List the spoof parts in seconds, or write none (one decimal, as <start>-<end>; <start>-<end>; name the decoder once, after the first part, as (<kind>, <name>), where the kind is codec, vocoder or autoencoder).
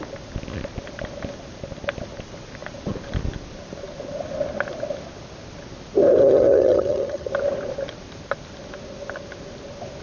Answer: 6.2-7.3 (vocoder, HiFi-GAN)